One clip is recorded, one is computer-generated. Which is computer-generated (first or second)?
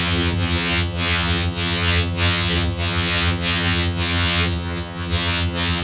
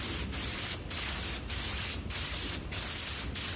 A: first